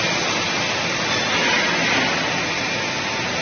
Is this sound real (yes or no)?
yes